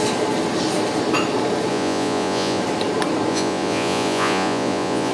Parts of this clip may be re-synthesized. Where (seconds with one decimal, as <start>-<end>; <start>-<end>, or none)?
1.7-2.6; 3.3-5.1